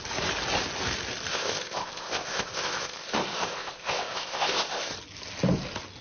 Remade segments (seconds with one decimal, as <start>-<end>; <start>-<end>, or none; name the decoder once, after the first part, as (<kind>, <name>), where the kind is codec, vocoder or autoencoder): 1.3-4.9 (codec, ZipCodec)